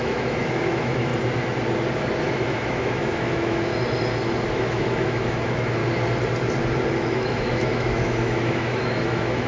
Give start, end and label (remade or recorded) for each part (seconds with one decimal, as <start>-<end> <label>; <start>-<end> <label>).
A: 0.0-1.1 remade; 1.1-2.3 recorded; 2.3-3.7 remade; 3.7-4.5 recorded; 4.5-5.8 remade; 5.8-6.9 recorded; 6.9-9.5 remade